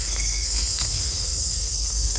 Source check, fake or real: fake